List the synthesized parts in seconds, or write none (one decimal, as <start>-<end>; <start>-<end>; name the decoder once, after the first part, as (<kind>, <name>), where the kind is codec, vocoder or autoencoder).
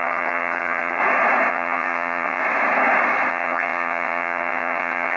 0.0-1.0 (vocoder, HiFi-GAN); 1.5-2.4; 3.3-5.2